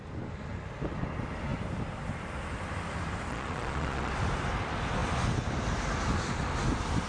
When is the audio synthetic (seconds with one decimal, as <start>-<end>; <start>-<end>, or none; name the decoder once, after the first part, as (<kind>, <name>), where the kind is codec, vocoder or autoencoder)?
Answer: 3.3-4.1 (vocoder, Vocos)